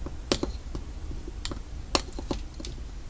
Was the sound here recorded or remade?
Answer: recorded